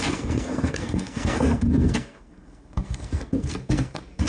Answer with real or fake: fake